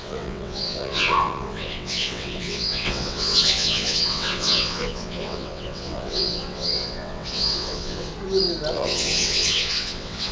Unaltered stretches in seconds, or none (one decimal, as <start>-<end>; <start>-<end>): 8.1-8.7